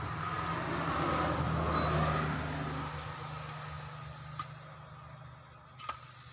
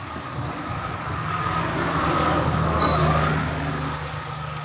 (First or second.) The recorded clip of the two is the first